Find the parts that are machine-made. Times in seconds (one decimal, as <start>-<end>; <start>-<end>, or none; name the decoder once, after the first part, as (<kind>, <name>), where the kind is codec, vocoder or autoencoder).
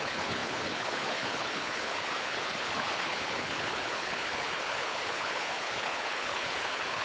0.0-7.0 (codec, HILCodec)